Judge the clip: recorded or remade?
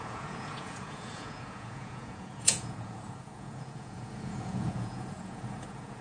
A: remade